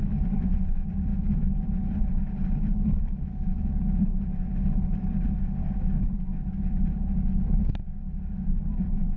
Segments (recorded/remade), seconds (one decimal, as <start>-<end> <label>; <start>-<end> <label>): 0.0-9.2 remade